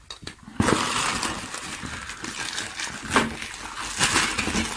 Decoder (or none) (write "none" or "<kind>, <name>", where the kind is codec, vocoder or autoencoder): none